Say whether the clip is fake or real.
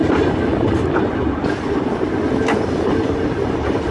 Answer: real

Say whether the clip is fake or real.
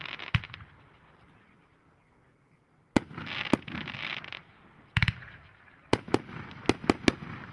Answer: real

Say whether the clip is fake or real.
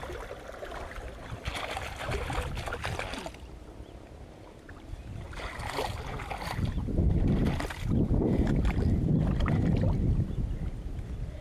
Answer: real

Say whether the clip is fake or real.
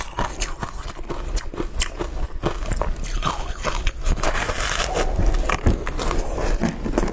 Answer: real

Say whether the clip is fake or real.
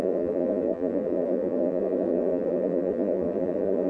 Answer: fake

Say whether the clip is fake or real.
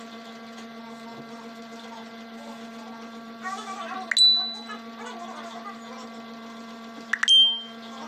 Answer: real